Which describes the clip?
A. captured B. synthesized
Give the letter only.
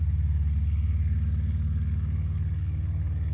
A